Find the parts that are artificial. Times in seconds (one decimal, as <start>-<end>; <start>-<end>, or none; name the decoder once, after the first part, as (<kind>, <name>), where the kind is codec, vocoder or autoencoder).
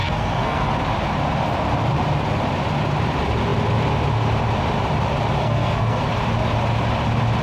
0.0-0.7 (codec, SNAC); 5.4-6.0